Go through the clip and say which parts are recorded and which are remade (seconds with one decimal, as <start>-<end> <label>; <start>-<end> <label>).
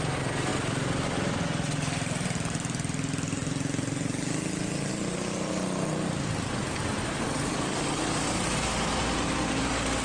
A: 0.0-10.0 recorded